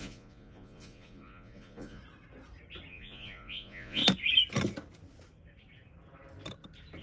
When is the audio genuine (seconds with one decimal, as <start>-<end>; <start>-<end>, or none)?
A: 2.0-2.9; 4.0-7.0